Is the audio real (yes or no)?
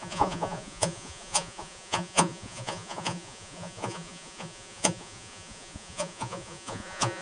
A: no